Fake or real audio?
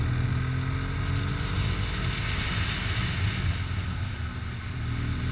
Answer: real